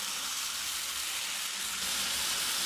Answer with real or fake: real